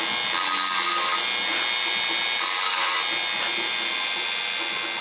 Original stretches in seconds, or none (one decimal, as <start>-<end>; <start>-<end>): 0.0-5.0